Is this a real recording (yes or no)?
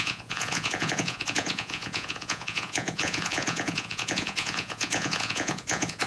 no